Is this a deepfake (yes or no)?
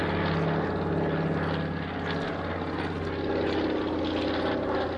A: no